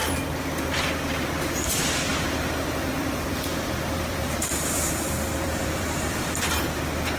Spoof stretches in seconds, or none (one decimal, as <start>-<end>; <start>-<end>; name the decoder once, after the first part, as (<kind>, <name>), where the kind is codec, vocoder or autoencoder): 0.0-1.7 (vocoder, BigVGAN v2); 2.1-6.4